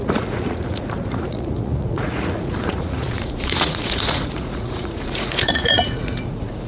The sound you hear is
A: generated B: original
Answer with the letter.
A